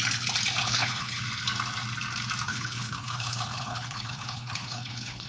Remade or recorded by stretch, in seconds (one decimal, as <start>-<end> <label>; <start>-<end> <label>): 0.0-0.6 recorded; 0.6-1.2 remade; 1.2-2.5 recorded; 2.5-5.3 remade